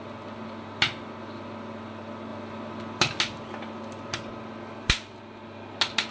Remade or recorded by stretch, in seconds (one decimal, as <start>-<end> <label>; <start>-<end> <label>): 0.0-6.1 recorded

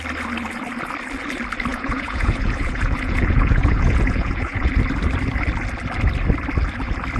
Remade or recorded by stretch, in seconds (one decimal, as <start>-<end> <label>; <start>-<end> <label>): 0.0-1.7 recorded; 1.7-4.7 remade; 4.7-7.2 recorded